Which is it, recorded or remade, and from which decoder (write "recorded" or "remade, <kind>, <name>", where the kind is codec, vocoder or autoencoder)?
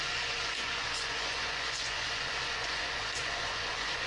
remade, vocoder, Vocos